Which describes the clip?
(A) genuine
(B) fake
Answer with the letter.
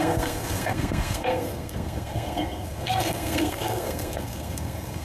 B